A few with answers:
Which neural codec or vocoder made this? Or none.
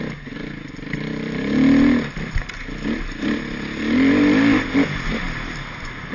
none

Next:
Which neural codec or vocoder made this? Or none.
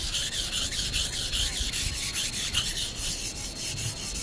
none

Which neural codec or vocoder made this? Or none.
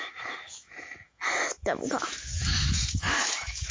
autoencoder, DAC-VAE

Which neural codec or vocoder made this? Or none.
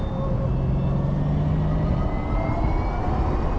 none